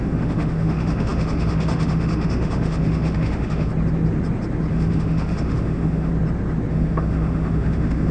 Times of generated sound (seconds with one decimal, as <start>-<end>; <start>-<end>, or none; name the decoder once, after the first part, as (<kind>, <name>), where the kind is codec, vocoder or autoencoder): 0.0-3.7 (autoencoder, DAC-VAE); 4.7-6.1; 6.7-8.1